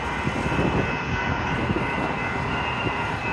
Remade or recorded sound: recorded